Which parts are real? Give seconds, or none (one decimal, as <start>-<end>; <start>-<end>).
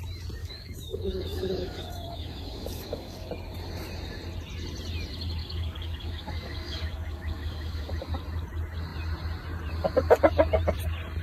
0.0-0.4; 3.3-5.4; 7.9-11.2